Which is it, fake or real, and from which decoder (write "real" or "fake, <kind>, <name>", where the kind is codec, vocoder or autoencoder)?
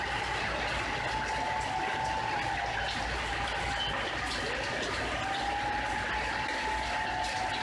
real